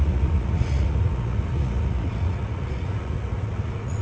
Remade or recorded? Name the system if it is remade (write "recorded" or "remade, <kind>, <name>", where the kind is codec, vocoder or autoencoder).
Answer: remade, vocoder, Vocos